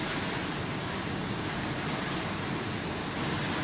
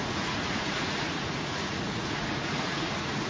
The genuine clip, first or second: first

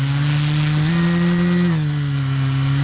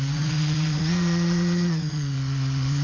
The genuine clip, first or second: first